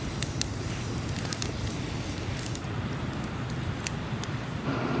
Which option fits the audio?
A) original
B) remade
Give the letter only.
A